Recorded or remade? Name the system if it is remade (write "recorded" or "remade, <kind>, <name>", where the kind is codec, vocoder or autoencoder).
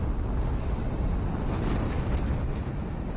recorded